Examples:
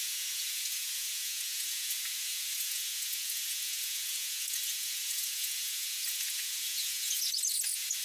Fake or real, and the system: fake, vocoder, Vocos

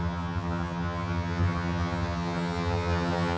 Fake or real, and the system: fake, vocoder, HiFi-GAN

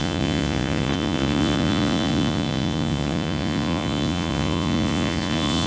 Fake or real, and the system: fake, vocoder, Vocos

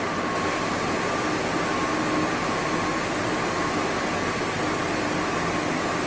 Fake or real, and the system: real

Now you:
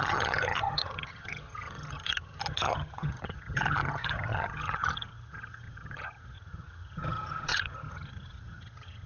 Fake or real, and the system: fake, vocoder, HiFi-GAN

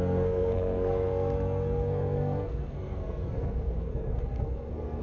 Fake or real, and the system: fake, codec, SNAC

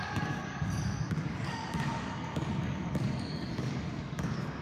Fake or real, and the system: fake, codec, DAC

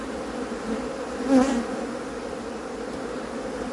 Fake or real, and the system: fake, vocoder, BigVGAN v2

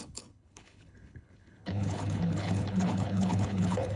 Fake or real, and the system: fake, codec, HILCodec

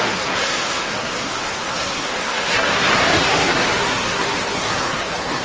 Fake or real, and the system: fake, codec, SNAC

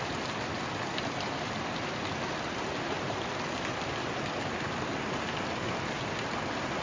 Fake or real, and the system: real